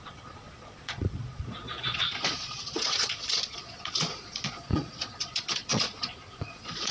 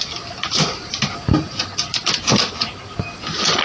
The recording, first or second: second